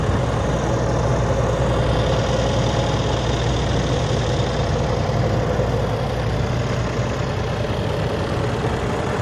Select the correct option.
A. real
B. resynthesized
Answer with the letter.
A